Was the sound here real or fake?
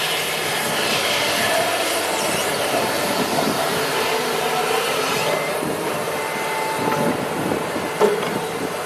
fake